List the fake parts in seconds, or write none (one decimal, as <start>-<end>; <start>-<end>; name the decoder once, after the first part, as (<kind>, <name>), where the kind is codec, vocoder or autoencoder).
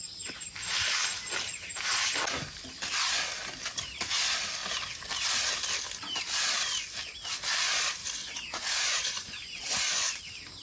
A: 8.0-10.2 (vocoder, Vocos)